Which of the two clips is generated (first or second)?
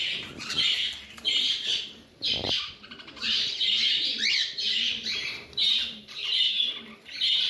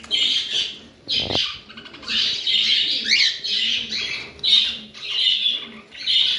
first